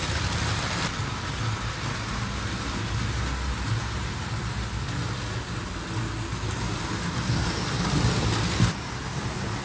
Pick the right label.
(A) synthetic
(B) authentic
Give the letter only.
B